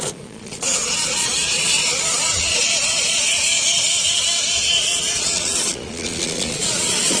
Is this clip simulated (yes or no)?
yes